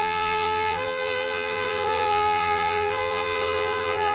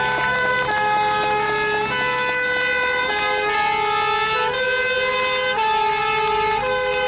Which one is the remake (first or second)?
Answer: first